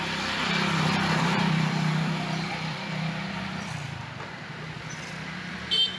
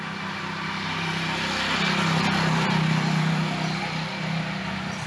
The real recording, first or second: second